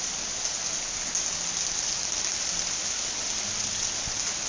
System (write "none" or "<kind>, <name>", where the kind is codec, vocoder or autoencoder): none